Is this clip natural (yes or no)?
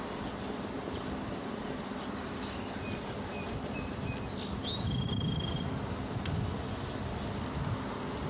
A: yes